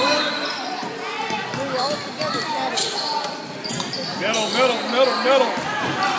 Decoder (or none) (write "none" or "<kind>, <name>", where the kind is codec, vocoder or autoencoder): none